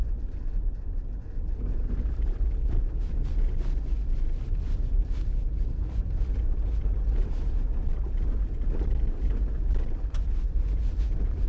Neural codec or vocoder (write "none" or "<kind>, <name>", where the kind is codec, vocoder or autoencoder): none